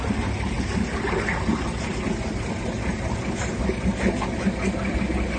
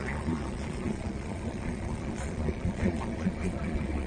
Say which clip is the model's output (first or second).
second